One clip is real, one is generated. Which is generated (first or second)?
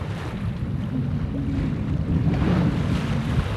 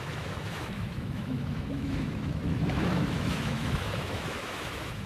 second